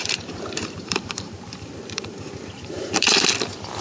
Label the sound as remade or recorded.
remade